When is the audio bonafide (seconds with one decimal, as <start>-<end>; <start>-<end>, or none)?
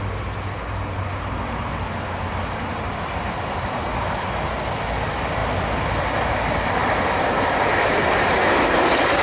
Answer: 0.0-9.2